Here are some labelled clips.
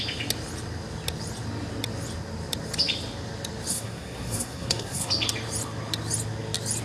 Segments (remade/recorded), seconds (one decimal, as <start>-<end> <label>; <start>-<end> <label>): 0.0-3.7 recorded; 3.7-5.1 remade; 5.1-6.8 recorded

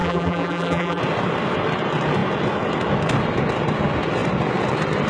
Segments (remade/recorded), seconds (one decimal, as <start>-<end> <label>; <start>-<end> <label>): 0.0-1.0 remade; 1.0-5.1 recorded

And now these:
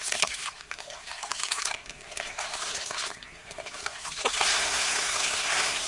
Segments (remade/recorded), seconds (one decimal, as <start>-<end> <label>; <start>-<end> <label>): 0.0-5.9 remade

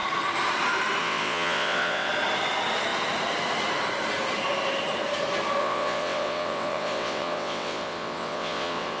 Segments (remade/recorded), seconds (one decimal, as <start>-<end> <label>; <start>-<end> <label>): 0.0-1.0 recorded; 1.0-2.1 remade; 2.1-5.6 recorded; 5.6-9.0 remade

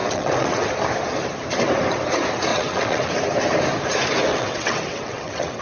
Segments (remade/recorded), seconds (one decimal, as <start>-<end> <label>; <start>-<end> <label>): 0.0-0.7 remade; 0.7-2.5 recorded; 2.5-3.1 remade; 3.1-4.3 recorded; 4.3-5.6 remade

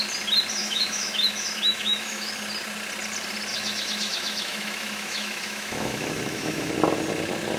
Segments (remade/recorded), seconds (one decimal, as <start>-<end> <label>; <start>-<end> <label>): 0.0-0.6 recorded; 0.6-2.3 remade; 2.3-3.5 recorded; 3.5-6.7 remade; 6.7-7.6 recorded

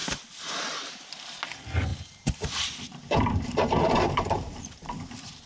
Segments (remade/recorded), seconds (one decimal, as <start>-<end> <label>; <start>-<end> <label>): 0.0-1.1 remade; 1.1-1.9 recorded; 1.9-5.5 remade

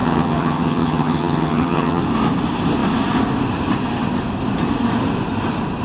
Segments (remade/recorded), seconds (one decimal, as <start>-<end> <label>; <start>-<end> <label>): 0.0-2.0 remade; 2.0-5.8 recorded